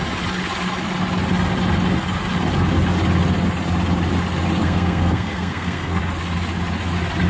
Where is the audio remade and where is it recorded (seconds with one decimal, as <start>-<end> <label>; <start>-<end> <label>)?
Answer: 0.0-4.6 recorded; 4.6-6.0 remade; 6.0-7.3 recorded